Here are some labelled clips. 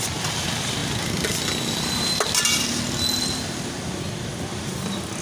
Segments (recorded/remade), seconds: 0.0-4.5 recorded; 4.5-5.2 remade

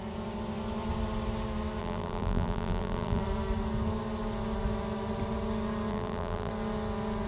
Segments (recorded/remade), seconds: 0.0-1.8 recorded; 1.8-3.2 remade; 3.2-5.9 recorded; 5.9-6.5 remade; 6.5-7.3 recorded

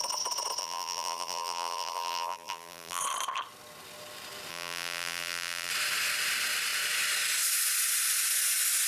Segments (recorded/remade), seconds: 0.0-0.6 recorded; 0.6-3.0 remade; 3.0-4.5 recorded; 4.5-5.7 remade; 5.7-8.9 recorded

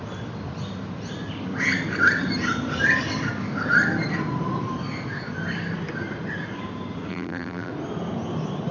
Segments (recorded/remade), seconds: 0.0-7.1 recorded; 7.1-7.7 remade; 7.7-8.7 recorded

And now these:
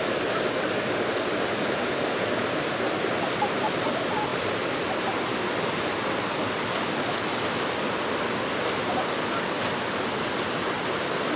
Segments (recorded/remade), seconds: 0.0-4.3 recorded; 4.3-4.9 remade; 4.9-11.4 recorded